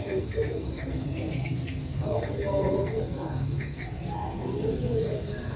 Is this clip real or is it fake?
fake